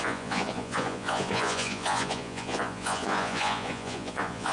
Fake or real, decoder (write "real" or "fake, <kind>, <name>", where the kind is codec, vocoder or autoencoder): fake, vocoder, Vocos